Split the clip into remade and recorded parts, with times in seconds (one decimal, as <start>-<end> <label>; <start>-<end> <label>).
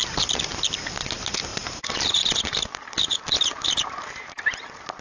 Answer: 0.0-1.5 recorded; 1.5-4.5 remade; 4.5-5.0 recorded